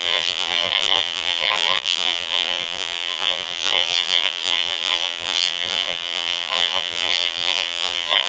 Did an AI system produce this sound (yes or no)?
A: yes